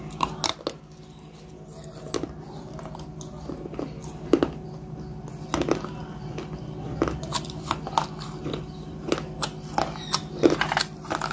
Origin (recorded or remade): recorded